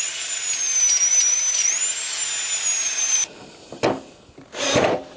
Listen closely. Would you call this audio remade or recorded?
recorded